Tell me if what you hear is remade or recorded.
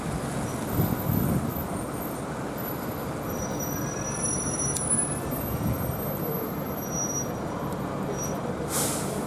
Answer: recorded